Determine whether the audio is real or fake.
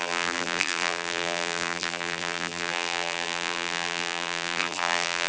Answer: fake